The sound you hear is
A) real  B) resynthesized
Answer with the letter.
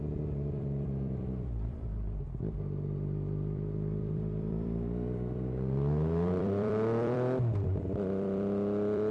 B